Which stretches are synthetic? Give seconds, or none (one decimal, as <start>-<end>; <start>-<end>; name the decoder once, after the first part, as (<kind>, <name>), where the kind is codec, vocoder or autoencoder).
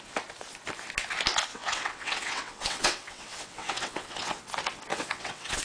1.5-4.4 (vocoder, WaveNeXt); 4.9-5.6